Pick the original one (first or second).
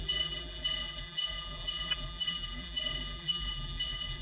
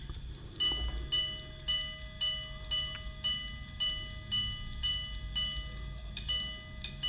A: second